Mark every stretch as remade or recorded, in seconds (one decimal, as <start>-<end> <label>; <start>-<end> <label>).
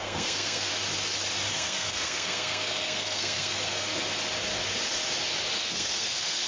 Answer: 0.0-0.7 remade; 0.7-1.5 recorded; 1.5-3.9 remade; 3.9-5.6 recorded; 5.6-6.5 remade